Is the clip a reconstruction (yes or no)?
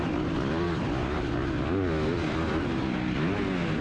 no